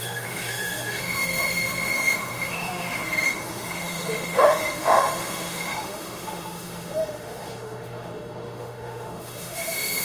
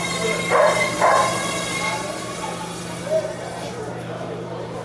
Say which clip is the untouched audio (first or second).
second